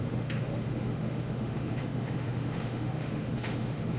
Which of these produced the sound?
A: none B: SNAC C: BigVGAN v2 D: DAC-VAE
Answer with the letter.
D